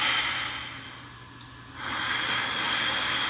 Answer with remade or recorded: recorded